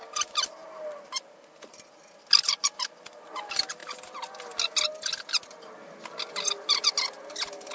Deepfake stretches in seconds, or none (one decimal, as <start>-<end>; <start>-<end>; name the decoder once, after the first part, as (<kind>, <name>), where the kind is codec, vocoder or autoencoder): none